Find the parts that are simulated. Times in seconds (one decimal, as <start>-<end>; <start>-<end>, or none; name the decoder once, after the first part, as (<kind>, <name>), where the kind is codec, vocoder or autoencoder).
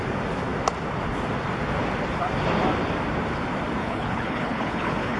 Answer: 3.8-5.2 (codec, HILCodec)